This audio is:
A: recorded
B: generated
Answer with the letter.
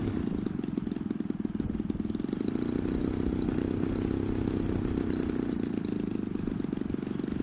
A